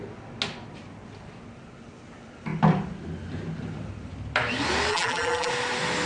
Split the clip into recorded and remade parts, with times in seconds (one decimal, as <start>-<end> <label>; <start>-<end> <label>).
0.0-4.9 recorded; 4.9-5.5 remade; 5.5-6.1 recorded